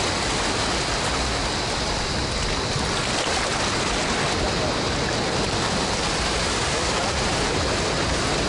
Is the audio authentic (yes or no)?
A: yes